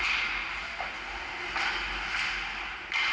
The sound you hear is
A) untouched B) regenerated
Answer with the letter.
A